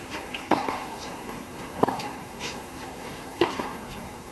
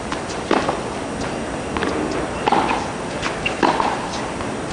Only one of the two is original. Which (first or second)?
second